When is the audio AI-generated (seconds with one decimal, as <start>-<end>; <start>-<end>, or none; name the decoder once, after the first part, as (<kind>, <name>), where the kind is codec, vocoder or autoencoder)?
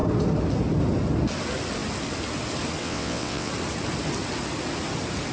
2.8-3.5 (vocoder, WaveNeXt)